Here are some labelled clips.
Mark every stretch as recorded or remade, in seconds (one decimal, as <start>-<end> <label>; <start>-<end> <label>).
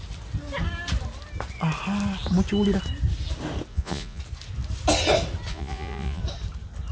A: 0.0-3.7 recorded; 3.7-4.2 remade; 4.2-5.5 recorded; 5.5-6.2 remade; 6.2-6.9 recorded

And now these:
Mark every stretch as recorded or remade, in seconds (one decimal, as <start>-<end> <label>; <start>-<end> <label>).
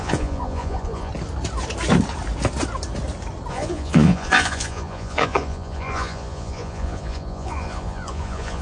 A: 0.0-1.1 remade; 1.1-3.5 recorded; 3.5-8.6 remade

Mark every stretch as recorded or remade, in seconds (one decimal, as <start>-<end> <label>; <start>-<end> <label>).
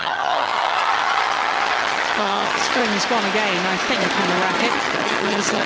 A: 0.0-2.8 remade; 2.8-4.7 recorded; 4.7-5.7 remade